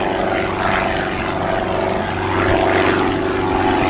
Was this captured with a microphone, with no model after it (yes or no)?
yes